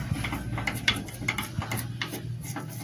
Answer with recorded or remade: recorded